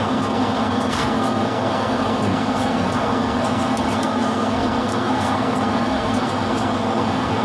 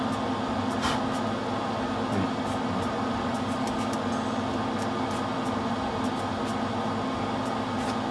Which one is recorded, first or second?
second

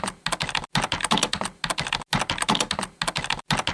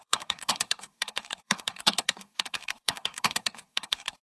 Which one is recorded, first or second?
first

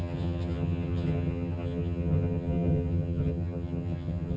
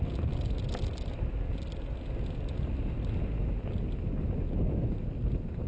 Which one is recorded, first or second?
second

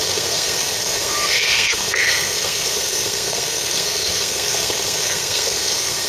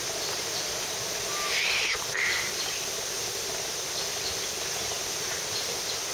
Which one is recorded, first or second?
second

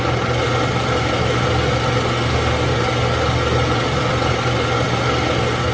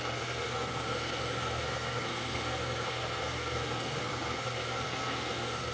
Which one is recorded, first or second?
first